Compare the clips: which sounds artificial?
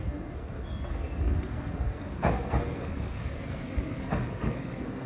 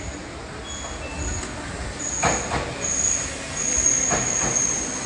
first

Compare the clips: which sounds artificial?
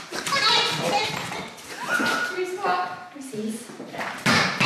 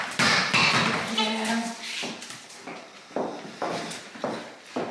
second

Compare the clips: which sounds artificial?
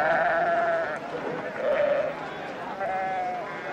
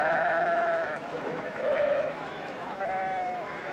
second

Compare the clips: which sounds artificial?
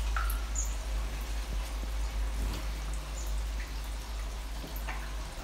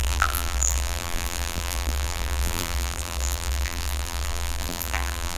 second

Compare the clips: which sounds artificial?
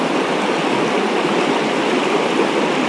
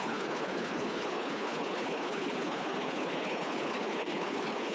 second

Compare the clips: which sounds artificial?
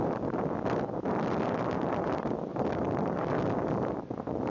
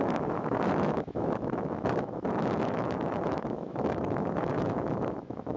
second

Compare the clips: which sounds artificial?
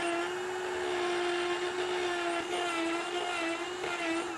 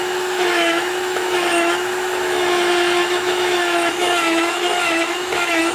second